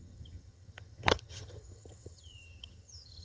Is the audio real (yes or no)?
no